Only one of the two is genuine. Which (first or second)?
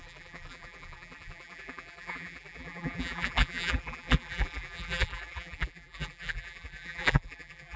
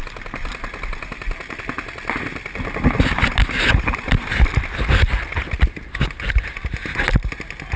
second